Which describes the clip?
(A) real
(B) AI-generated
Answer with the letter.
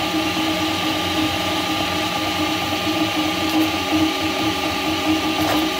A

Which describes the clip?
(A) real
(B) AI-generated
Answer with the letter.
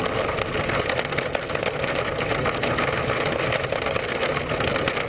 A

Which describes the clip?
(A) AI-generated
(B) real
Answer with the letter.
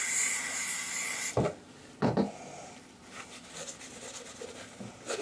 B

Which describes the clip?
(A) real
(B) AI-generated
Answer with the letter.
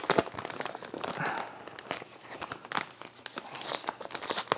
A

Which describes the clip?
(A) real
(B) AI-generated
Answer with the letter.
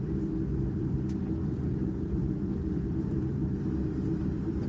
B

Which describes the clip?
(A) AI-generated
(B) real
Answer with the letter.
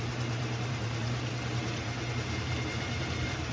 A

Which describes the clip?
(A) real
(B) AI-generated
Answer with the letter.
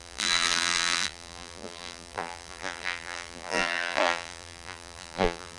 B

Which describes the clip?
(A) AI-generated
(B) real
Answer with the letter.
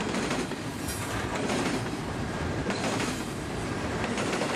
A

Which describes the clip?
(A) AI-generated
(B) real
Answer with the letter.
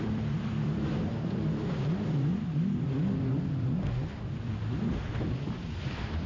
A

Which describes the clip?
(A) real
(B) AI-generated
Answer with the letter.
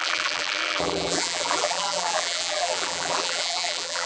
B